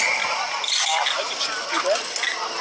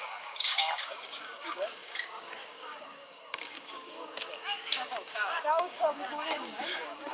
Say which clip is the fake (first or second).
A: second